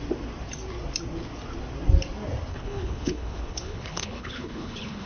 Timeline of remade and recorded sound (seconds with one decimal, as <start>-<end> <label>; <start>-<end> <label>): 0.0-2.5 recorded; 2.5-5.1 remade

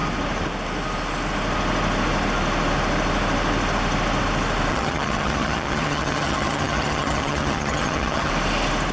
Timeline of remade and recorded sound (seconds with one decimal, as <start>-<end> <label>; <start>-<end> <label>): 0.0-4.7 recorded; 4.7-8.3 remade; 8.3-8.9 recorded

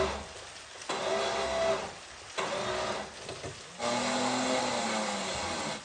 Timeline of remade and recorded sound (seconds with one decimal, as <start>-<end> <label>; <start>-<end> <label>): 0.0-5.8 recorded

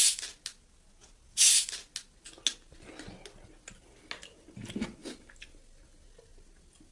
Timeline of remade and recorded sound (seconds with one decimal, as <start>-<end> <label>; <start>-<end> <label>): 0.0-6.9 recorded

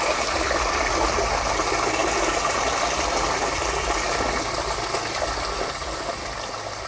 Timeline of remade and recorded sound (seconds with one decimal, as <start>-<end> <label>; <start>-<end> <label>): 0.0-6.9 recorded

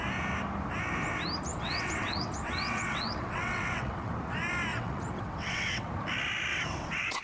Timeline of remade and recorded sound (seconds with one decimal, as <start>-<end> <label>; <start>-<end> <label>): 0.0-1.5 recorded; 1.5-4.1 remade; 4.1-4.7 recorded; 4.7-5.9 remade; 5.9-6.5 recorded; 6.5-7.2 remade

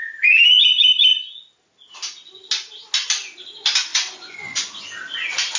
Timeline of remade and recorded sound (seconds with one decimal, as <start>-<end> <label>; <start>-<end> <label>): 0.0-3.9 recorded; 3.9-4.8 remade; 4.8-5.6 recorded